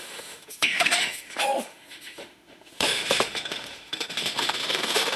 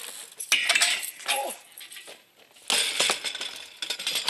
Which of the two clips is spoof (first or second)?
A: first